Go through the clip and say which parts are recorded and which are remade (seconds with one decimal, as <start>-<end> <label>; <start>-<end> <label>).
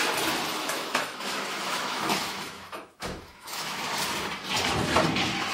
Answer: 0.0-0.5 recorded; 0.5-3.8 remade; 3.8-5.5 recorded